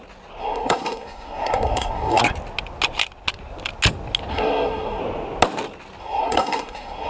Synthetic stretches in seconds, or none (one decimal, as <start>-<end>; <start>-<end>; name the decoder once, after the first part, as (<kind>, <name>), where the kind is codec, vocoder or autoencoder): 0.4-2.2 (codec, SNAC); 4.3-5.0; 6.0-7.1